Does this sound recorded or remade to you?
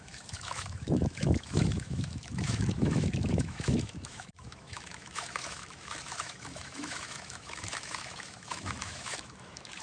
remade